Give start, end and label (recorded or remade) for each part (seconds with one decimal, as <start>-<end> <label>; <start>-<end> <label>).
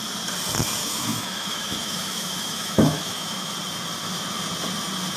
0.0-0.8 recorded; 0.8-3.5 remade; 3.5-5.2 recorded